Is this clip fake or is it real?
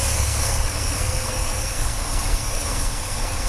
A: fake